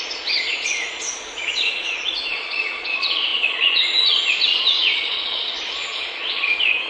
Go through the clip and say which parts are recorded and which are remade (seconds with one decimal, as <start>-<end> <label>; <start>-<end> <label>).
0.0-6.9 remade